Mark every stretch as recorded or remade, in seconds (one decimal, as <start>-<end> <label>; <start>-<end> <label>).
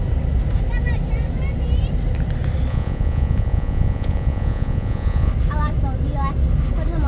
0.0-2.7 recorded; 2.7-5.3 remade; 5.3-7.1 recorded